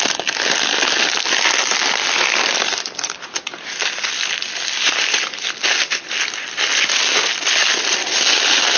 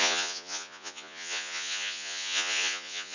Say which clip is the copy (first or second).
second